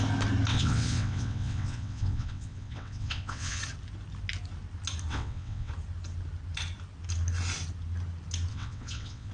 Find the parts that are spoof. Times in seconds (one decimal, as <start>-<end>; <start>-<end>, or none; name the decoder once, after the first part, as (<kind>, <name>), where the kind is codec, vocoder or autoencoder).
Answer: 0.5-3.6 (vocoder, WaveNeXt); 5.1-5.7; 8.5-9.3